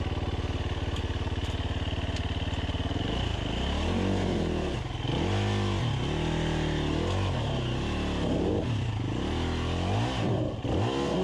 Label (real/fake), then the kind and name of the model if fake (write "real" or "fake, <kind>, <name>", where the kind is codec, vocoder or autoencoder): real